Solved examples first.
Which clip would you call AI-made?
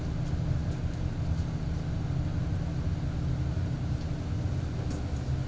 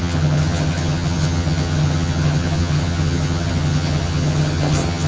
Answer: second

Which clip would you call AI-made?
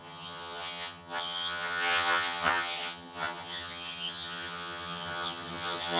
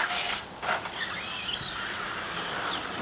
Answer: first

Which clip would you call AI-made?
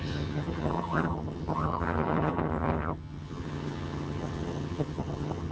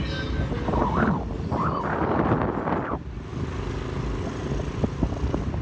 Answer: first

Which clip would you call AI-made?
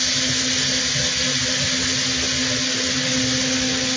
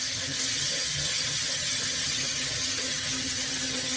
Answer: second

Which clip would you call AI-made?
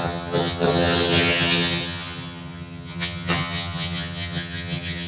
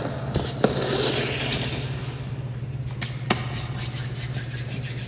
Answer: first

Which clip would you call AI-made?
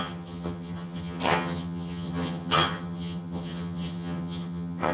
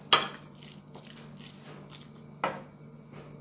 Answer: first